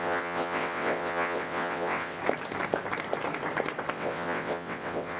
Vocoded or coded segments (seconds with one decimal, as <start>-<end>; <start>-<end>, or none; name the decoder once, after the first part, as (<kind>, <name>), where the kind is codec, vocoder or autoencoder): 0.0-2.2 (vocoder, WaveNeXt); 3.9-5.2

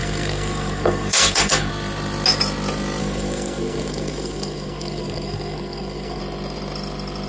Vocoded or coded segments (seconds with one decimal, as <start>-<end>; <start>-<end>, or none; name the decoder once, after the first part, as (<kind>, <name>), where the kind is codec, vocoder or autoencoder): 0.0-1.7 (codec, SNAC); 3.0-6.2

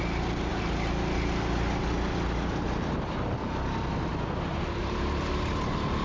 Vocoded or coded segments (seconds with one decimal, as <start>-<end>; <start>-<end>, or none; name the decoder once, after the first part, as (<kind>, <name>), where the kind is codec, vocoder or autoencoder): 4.5-5.5 (vocoder, BigVGAN v2)

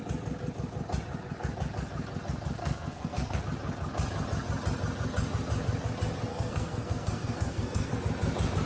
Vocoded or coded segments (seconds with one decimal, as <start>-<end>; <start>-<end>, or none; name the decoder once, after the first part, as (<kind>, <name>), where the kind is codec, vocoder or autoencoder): 2.6-3.4 (codec, SNAC); 6.3-7.9

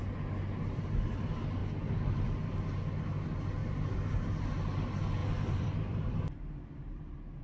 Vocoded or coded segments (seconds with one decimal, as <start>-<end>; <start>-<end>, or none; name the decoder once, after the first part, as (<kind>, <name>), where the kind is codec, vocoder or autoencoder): 1.6-2.5 (vocoder, BigVGAN v2); 5.2-7.0

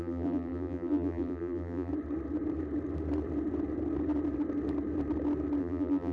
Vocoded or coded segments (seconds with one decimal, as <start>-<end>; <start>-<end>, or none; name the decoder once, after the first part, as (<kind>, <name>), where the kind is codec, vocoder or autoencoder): 0.0-1.9 (vocoder, BigVGAN v2); 5.6-6.1

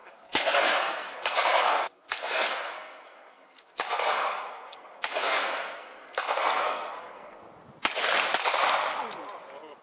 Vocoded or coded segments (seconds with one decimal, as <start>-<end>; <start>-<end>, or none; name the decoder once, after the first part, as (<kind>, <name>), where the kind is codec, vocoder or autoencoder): 0.0-7.4 (codec, SNAC)

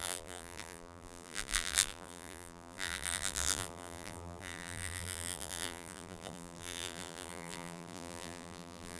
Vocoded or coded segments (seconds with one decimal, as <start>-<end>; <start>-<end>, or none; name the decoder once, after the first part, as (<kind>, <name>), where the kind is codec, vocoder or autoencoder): 0.0-9.0 (vocoder, BigVGAN v2)